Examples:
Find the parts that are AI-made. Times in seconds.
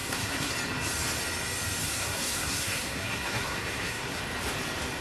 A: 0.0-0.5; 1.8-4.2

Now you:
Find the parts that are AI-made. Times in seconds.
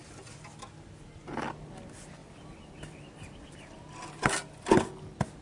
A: none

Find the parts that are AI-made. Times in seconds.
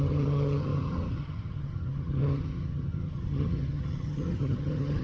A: 0.0-5.0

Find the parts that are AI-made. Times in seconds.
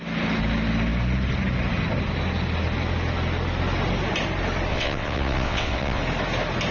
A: 4.7-6.0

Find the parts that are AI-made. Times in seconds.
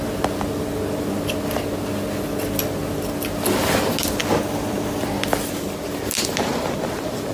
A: 4.2-5.0